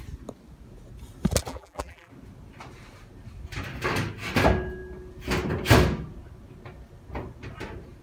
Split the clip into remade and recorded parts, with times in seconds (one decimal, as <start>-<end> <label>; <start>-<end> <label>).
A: 0.0-1.5 recorded; 1.5-2.1 remade; 2.1-8.0 recorded